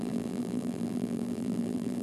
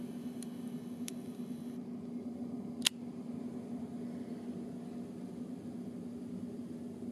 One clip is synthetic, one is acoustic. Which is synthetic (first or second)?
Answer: first